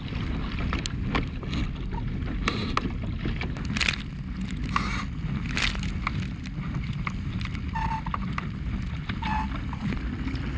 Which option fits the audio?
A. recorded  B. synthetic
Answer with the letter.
A